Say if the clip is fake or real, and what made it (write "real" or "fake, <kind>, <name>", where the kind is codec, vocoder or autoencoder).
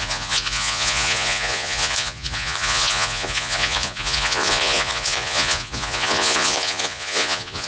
fake, vocoder, Vocos